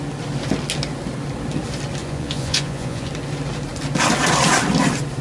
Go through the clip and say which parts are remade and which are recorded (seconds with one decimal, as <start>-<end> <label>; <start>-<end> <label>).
0.0-2.0 recorded; 2.0-3.1 remade; 3.1-5.2 recorded